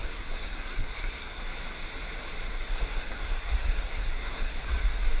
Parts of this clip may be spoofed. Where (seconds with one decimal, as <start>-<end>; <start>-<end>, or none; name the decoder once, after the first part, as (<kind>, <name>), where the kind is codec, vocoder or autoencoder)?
0.0-1.4 (codec, SNAC); 2.5-4.6